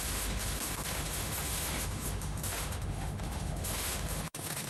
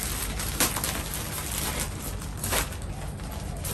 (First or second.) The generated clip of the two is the first